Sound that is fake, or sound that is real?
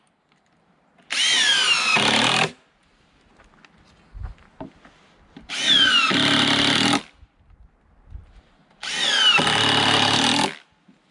real